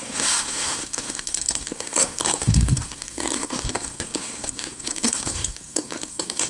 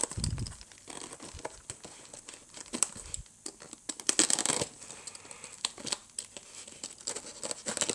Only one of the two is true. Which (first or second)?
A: second